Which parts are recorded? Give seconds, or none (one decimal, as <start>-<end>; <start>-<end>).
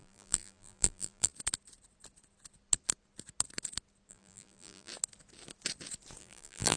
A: 1.3-4.1; 4.9-6.2